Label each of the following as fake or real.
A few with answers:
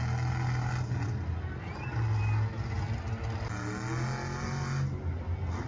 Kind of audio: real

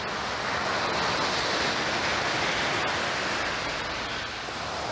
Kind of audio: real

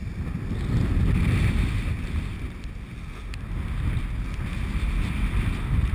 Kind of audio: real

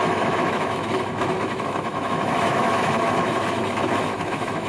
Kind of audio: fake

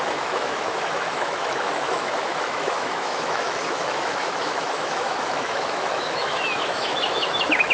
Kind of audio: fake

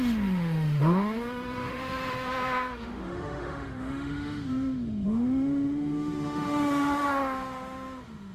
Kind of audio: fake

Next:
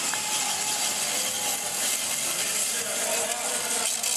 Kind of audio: real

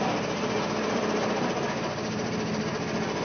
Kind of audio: real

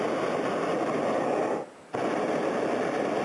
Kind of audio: real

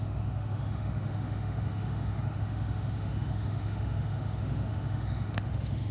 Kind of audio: fake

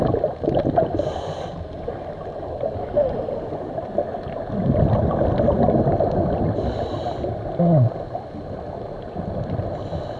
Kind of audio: real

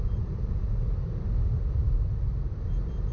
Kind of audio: real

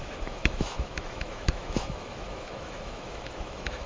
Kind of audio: fake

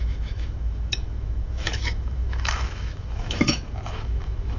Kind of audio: fake